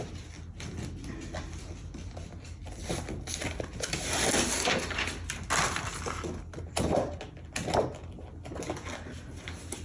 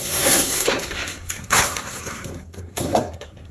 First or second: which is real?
first